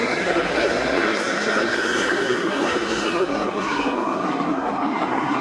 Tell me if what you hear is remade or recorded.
remade